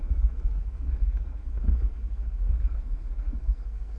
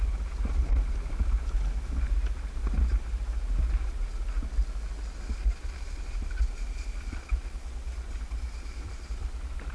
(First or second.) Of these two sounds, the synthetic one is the first